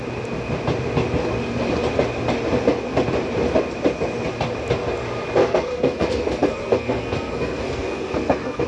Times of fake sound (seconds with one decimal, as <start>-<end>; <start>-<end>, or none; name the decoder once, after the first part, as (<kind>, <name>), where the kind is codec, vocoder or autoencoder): 5.4-8.7 (codec, SNAC)